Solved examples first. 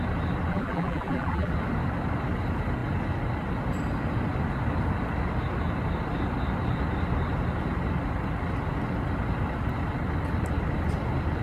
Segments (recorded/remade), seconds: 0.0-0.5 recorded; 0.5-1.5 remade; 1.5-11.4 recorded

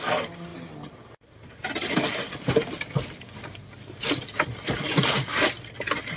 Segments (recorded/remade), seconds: 0.0-6.2 remade

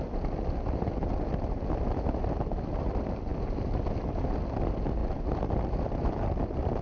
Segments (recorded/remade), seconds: 0.0-6.8 remade